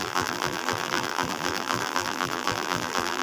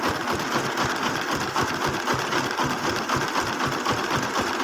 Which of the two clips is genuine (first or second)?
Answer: second